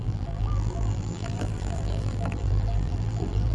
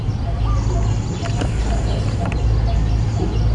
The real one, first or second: second